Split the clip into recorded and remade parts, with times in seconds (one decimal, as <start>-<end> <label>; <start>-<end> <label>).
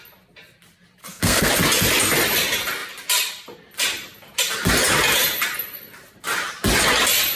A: 0.0-1.0 recorded; 1.0-1.5 remade; 1.5-7.3 recorded